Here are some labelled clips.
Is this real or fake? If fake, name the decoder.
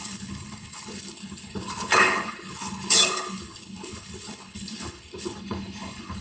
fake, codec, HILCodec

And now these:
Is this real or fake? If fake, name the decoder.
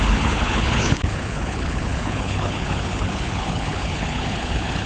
fake, codec, HILCodec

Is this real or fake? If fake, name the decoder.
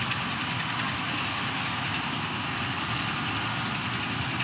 real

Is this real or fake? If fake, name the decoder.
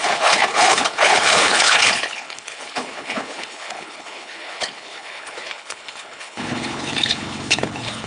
fake, codec, HILCodec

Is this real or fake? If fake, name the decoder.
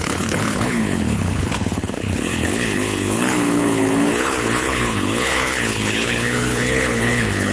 fake, codec, HILCodec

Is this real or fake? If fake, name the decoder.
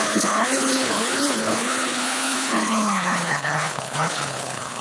fake, codec, HILCodec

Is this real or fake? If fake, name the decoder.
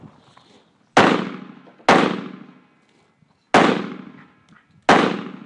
real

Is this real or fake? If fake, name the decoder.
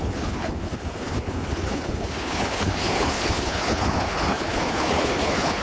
fake, codec, HILCodec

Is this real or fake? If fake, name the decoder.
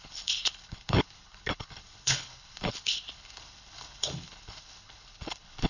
fake, codec, HILCodec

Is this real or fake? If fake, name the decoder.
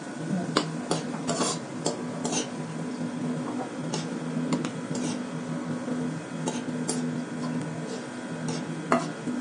real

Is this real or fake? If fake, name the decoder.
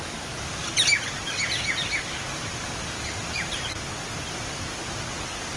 real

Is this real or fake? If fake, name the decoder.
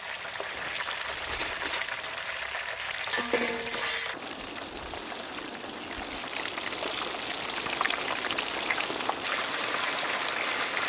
real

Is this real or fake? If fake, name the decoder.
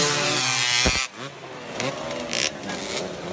real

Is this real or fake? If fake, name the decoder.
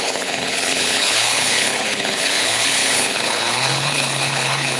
fake, codec, HILCodec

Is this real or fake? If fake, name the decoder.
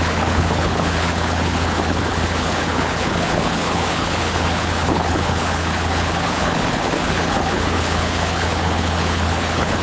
fake, codec, HILCodec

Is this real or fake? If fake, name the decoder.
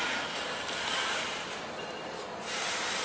real